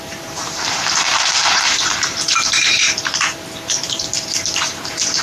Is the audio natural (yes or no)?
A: no